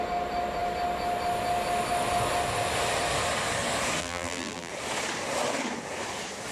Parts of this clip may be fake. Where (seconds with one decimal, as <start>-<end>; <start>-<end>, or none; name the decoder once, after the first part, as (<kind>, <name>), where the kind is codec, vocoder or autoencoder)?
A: 4.0-4.7 (vocoder, BigVGAN v2)